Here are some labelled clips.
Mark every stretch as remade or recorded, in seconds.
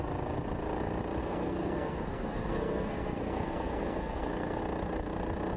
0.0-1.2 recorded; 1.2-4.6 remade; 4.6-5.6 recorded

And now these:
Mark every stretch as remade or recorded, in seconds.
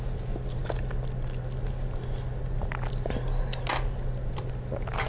0.0-5.1 recorded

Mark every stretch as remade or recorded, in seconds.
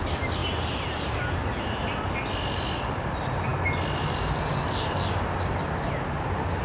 0.0-6.6 recorded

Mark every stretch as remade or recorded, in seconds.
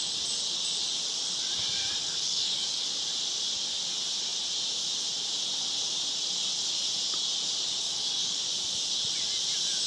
0.0-2.0 recorded; 2.0-2.9 remade; 2.9-7.8 recorded; 7.8-8.4 remade; 8.4-9.9 recorded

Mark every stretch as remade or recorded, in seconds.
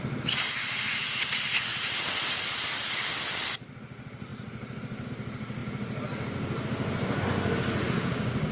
0.0-8.5 recorded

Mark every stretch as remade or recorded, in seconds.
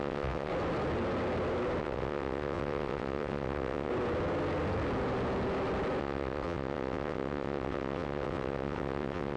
0.0-0.5 remade; 0.5-1.8 recorded; 1.8-3.9 remade; 3.9-6.0 recorded; 6.0-9.4 remade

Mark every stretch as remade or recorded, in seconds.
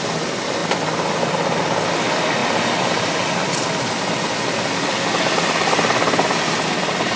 0.0-7.2 recorded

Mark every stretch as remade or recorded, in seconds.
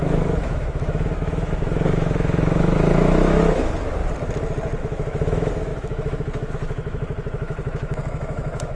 0.0-4.0 remade; 4.0-4.8 recorded; 4.8-8.8 remade